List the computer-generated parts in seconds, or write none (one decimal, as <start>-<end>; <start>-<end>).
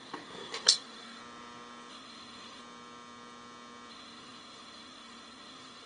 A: 0.0-1.2; 1.9-2.6; 3.9-5.9